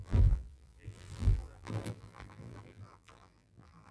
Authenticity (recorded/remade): remade